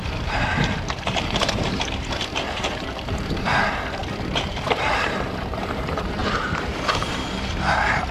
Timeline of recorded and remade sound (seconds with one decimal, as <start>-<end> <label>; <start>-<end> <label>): 0.0-8.1 remade